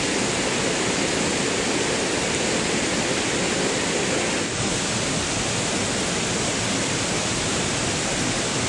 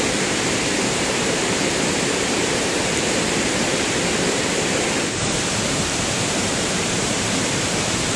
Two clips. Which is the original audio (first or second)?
first